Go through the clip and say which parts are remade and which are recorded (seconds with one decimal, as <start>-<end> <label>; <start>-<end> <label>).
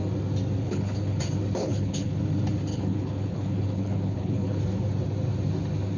0.0-0.6 recorded; 0.6-1.2 remade; 1.2-1.6 recorded; 1.6-2.2 remade; 2.2-2.7 recorded; 2.7-4.6 remade; 4.6-6.0 recorded